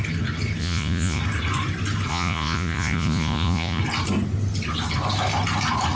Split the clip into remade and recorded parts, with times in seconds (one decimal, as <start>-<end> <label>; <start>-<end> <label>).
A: 0.0-0.6 recorded; 0.6-1.2 remade; 1.2-2.1 recorded; 2.1-3.8 remade; 3.8-6.0 recorded